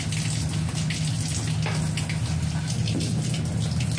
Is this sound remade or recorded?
recorded